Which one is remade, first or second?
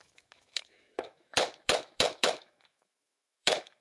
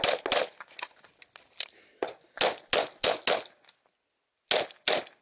first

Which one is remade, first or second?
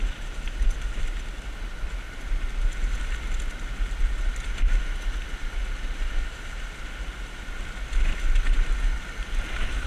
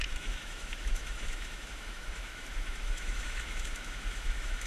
second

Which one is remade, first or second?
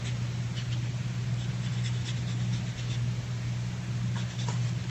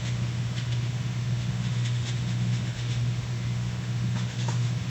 second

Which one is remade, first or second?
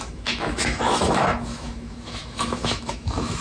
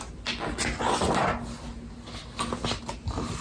first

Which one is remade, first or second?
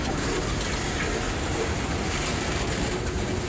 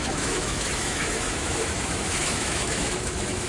second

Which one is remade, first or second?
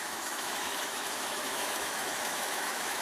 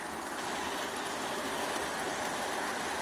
first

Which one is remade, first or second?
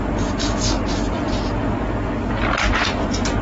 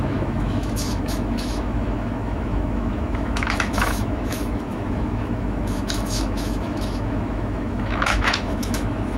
second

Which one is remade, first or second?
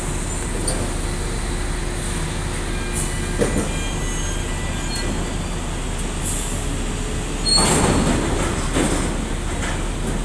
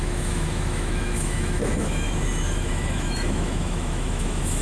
second